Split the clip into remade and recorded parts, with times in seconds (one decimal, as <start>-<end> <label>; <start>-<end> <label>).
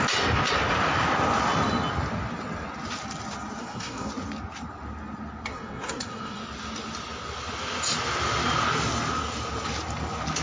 0.0-3.6 recorded; 3.6-4.1 remade; 4.1-5.5 recorded; 5.5-6.4 remade; 6.4-10.4 recorded